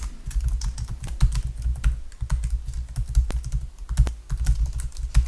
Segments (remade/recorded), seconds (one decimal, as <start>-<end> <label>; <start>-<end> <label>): 0.0-5.3 recorded